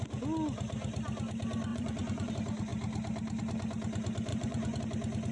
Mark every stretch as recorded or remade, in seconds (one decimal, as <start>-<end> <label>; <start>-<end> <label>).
0.0-1.7 recorded; 1.7-2.3 remade; 2.3-4.3 recorded; 4.3-4.8 remade; 4.8-5.3 recorded